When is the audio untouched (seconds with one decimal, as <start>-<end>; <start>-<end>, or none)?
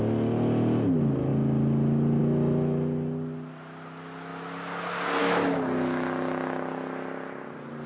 0.0-7.9